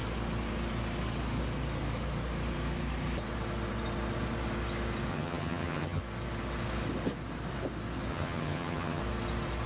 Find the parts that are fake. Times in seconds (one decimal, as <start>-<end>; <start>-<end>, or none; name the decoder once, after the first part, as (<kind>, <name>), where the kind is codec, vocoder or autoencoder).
5.1-6.0 (vocoder, HiFi-GAN); 8.1-9.0